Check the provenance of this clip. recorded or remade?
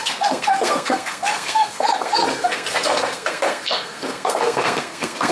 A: remade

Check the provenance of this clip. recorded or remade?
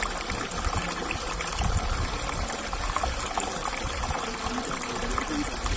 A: recorded